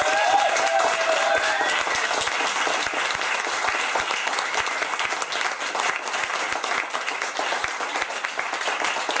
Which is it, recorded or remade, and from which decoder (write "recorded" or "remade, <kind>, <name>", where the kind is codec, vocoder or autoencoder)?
recorded